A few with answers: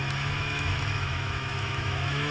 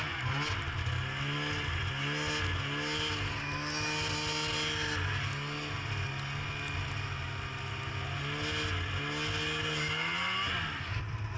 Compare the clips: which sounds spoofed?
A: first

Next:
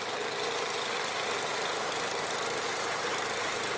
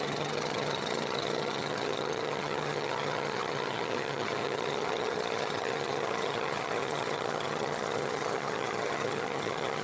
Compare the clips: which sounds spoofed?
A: second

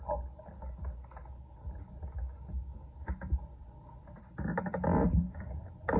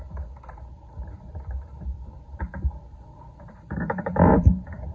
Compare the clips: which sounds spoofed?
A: second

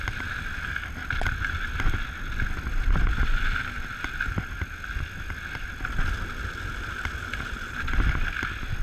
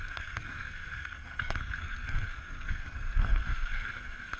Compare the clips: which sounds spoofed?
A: second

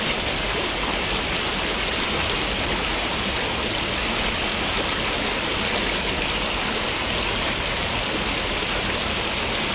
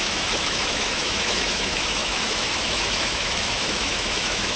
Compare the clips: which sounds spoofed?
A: second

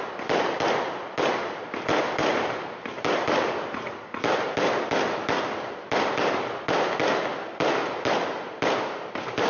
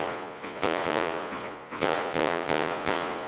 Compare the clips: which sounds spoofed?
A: second